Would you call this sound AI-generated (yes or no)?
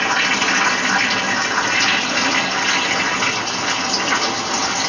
no